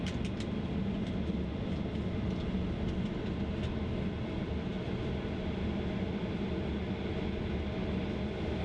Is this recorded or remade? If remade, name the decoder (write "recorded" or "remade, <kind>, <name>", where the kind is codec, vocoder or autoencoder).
recorded